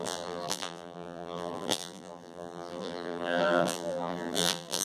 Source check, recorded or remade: remade